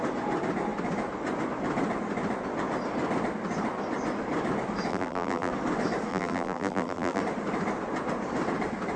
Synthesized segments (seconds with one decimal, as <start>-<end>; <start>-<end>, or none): 4.9-5.5; 6.1-7.2